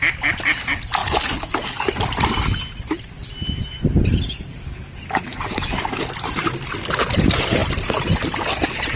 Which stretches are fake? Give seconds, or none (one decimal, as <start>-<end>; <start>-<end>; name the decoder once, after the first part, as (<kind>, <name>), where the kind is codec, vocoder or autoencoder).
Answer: 1.0-2.0 (codec, DAC); 4.5-5.8